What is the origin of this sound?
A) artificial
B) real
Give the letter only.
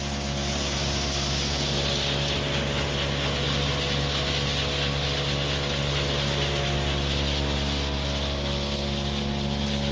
B